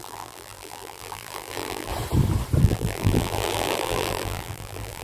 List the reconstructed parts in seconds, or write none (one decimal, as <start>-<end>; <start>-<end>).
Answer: 0.0-1.9; 2.6-5.0